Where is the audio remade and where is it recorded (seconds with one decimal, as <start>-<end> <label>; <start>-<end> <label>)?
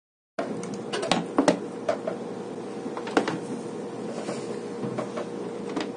0.0-6.0 recorded